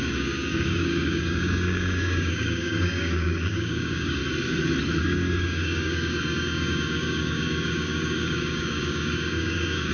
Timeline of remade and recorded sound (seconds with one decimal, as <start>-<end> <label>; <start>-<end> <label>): 0.0-4.2 remade; 4.2-5.0 recorded; 5.0-9.9 remade